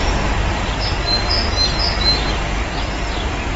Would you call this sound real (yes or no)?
yes